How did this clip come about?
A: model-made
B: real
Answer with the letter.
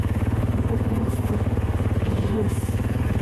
A